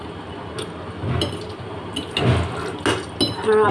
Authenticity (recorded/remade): recorded